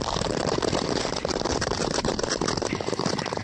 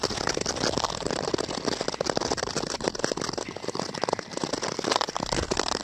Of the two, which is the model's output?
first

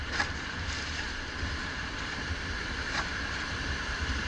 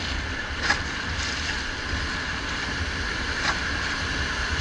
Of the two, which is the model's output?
first